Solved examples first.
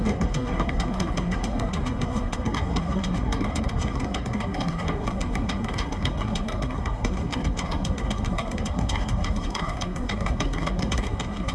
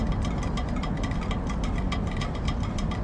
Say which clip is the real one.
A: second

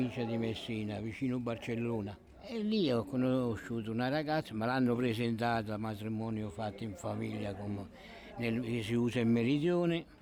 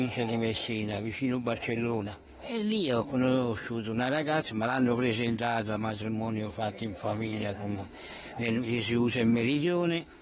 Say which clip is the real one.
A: first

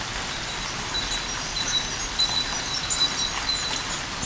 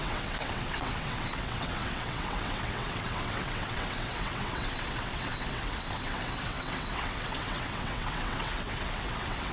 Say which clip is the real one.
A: first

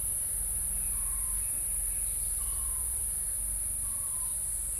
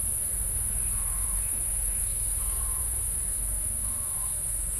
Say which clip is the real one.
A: first